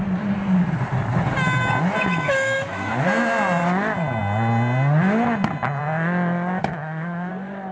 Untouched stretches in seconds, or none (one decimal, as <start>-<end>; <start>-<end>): 0.0-2.1; 2.9-6.6; 7.3-7.7